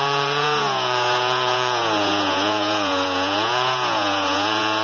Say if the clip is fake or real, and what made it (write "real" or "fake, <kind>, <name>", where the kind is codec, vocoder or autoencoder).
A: fake, vocoder, Vocos